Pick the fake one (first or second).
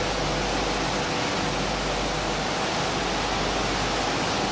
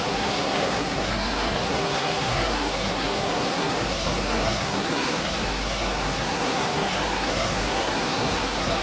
second